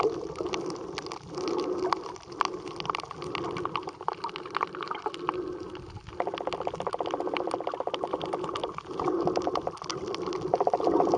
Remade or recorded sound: recorded